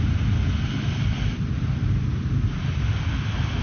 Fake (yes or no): no